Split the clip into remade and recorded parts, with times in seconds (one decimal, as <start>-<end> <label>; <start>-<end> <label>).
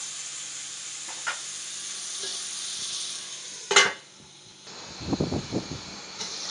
0.0-6.5 recorded